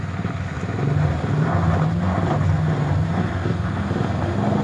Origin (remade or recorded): recorded